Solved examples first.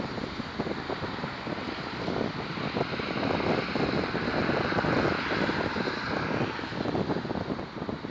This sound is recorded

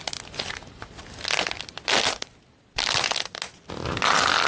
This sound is recorded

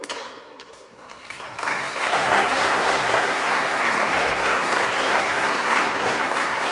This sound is remade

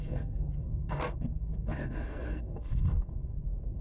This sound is remade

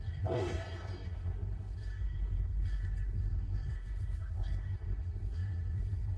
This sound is remade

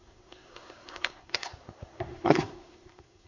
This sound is remade